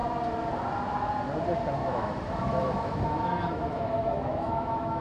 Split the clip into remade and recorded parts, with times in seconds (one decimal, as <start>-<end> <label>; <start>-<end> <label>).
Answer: 0.0-1.8 recorded; 1.8-5.0 remade